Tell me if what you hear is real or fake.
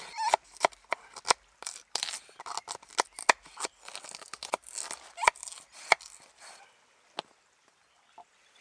real